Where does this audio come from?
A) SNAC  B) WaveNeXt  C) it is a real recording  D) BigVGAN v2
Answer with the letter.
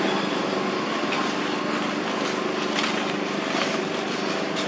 C